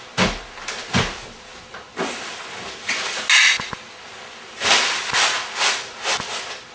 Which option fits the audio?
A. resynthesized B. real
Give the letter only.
B